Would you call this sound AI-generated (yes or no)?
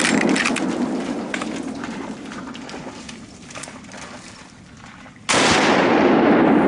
no